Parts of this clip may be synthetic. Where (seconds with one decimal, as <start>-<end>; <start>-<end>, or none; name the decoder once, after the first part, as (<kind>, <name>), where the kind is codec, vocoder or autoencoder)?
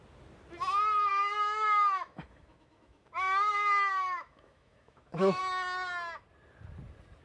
1.1-5.4 (autoencoder, DAC-VAE)